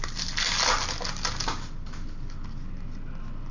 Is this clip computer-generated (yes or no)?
no